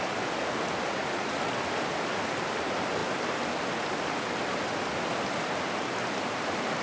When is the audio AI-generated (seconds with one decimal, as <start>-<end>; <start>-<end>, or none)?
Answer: 0.9-1.5